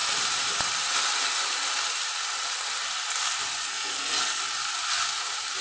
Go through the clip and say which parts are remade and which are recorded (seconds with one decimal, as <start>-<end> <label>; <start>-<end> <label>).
0.0-3.7 recorded; 3.7-4.4 remade; 4.4-5.6 recorded